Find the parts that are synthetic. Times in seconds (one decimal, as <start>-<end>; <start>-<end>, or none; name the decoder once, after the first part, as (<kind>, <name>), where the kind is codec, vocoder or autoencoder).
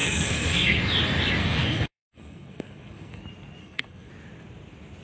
0.0-0.8 (codec, SNAC); 1.4-3.2; 3.6-4.1